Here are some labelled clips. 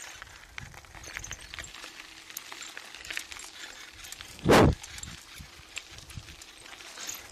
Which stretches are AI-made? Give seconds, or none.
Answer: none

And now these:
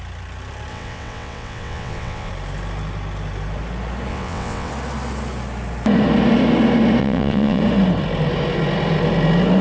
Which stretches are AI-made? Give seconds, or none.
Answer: 0.7-2.3 (vocoder, WaveNeXt); 4.1-4.7; 7.0-7.6

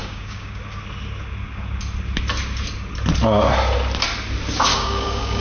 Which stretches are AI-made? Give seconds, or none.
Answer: 0.0-0.6 (codec, DAC); 4.7-5.4

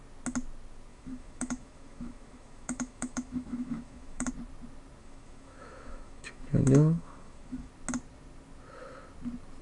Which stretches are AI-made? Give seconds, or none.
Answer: 0.9-4.3 (autoencoder, DAC-VAE); 5.0-7.7

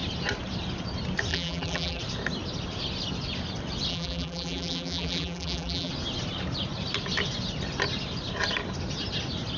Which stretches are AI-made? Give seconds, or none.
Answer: 1.3-2.0 (vocoder, BigVGAN v2); 3.9-5.9

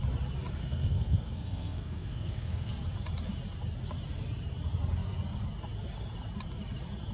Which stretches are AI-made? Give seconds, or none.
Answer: 0.6-2.7 (codec, SNAC)

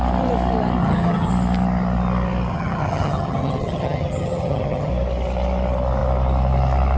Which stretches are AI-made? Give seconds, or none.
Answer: 0.8-1.3 (vocoder, HiFi-GAN); 2.5-4.9